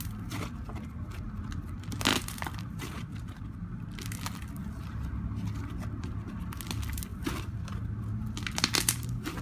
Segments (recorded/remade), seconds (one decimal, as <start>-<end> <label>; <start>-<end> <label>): 0.0-2.1 recorded; 2.1-4.6 remade; 4.6-7.1 recorded; 7.1-8.9 remade; 8.9-9.4 recorded